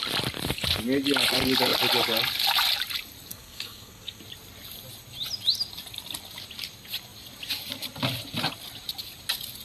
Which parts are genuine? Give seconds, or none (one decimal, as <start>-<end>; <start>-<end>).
0.0-3.3; 4.2-9.6